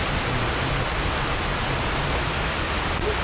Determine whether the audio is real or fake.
fake